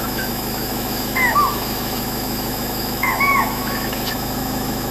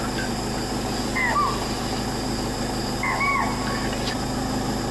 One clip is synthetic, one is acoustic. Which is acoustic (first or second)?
second